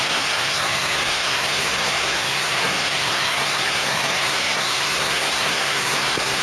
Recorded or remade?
remade